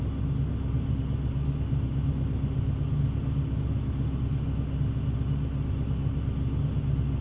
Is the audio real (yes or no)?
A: yes